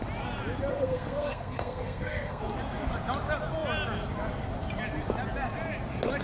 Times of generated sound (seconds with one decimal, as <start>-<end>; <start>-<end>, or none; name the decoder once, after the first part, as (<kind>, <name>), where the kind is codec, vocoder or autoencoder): 0.7-2.4 (codec, SNAC)